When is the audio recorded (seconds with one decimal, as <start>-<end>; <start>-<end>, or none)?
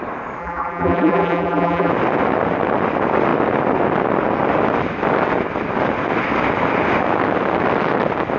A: 0.0-0.4; 1.9-8.4